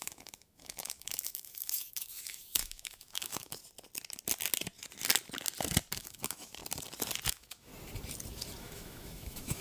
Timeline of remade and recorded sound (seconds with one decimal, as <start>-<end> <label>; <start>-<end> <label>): 0.0-3.6 remade; 3.6-6.0 recorded; 6.0-6.6 remade; 6.6-7.3 recorded; 7.3-7.7 remade; 7.7-8.6 recorded; 8.6-9.6 remade